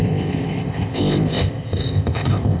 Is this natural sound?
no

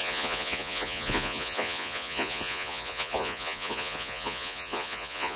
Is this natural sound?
no